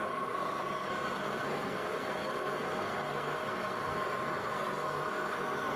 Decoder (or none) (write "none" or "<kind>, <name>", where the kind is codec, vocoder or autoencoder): codec, SNAC